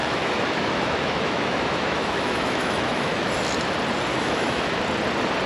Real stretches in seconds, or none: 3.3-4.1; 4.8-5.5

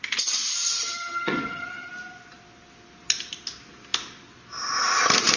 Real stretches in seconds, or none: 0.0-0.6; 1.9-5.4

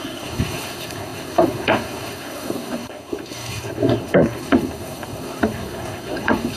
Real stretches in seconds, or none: none

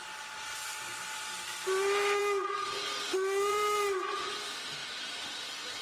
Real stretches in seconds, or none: 0.0-3.5; 4.1-4.8; 5.3-5.8

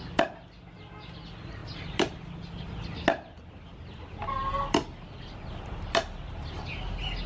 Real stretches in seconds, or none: 0.0-7.3